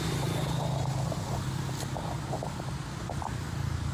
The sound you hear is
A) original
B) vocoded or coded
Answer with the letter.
A